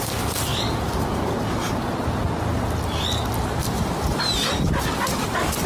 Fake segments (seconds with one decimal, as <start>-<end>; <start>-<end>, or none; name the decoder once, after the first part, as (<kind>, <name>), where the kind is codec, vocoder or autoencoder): none